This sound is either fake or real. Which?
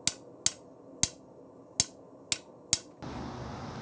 real